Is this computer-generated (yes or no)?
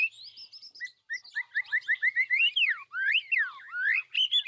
no